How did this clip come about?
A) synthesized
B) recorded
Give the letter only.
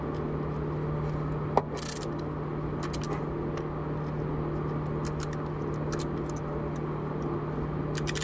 B